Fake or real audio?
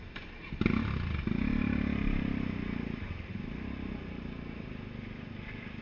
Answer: real